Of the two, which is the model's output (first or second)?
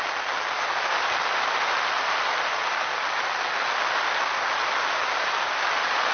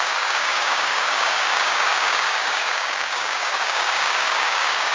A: second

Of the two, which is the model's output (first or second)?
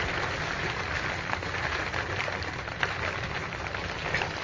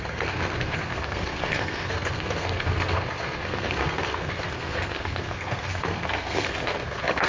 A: second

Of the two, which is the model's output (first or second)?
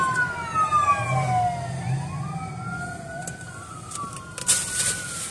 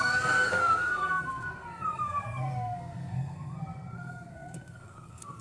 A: second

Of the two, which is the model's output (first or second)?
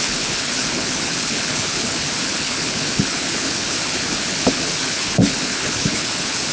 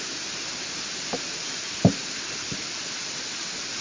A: first